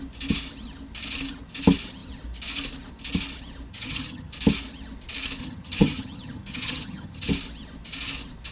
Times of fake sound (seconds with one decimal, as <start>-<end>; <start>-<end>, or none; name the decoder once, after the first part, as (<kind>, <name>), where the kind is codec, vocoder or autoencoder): 3.7-4.3 (vocoder, HiFi-GAN); 5.4-7.3